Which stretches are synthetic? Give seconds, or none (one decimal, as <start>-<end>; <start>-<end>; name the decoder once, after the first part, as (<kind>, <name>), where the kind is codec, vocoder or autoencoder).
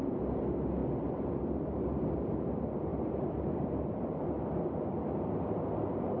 0.8-2.3 (vocoder, BigVGAN v2); 2.9-4.3